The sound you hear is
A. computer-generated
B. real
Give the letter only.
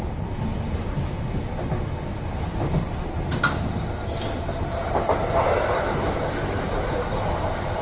B